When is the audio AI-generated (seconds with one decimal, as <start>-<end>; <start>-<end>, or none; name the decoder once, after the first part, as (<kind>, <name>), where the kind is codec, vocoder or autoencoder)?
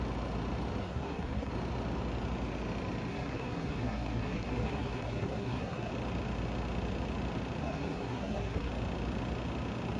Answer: 0.8-1.5 (codec, SNAC); 3.1-5.9; 7.6-8.7